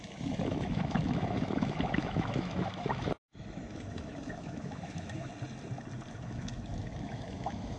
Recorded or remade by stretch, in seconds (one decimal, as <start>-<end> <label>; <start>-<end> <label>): 0.0-5.3 remade; 5.3-6.1 recorded; 6.1-7.8 remade